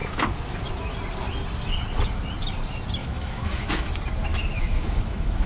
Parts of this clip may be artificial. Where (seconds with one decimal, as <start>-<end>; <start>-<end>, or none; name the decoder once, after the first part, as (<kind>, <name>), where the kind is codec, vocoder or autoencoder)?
0.0-0.7 (autoencoder, DAC-VAE); 3.0-3.9; 4.3-5.5